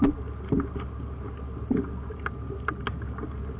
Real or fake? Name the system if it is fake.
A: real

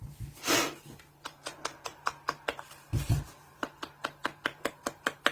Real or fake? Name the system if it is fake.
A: fake, vocoder, BigVGAN v2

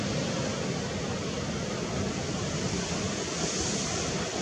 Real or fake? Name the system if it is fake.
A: real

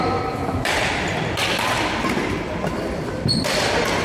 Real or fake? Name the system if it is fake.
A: fake, vocoder, BigVGAN v2